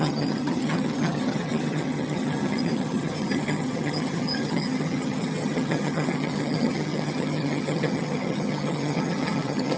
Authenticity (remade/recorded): remade